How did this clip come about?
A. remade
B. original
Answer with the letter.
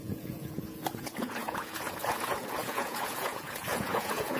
A